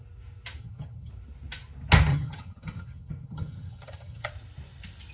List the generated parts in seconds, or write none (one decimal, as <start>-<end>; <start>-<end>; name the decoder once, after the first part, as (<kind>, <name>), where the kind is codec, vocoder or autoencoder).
0.6-1.1 (vocoder, HiFi-GAN); 2.1-4.3